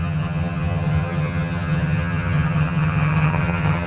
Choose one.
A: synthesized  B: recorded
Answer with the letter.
A